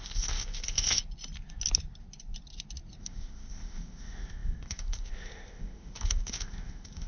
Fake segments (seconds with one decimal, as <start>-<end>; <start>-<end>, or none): 0.0-1.0; 3.0-7.1